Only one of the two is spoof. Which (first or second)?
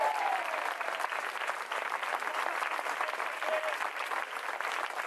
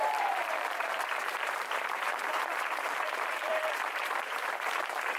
second